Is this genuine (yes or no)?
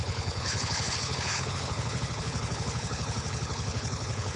no